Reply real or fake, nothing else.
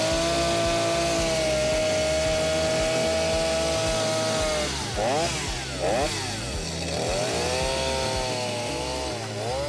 real